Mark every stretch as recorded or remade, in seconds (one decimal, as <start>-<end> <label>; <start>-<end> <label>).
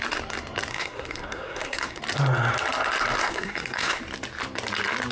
0.0-0.7 recorded; 0.7-2.0 remade; 2.0-3.2 recorded; 3.2-4.0 remade; 4.0-5.1 recorded